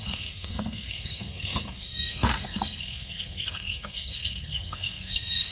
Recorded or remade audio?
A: remade